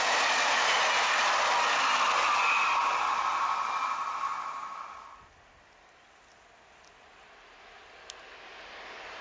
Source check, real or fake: real